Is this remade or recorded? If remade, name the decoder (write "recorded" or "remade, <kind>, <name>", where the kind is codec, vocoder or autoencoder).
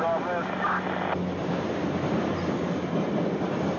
recorded